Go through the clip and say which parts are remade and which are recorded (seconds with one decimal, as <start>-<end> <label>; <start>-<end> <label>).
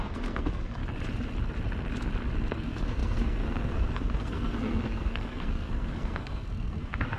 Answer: 0.0-0.8 remade; 0.8-2.5 recorded; 2.5-7.2 remade